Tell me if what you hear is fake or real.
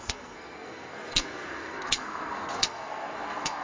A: fake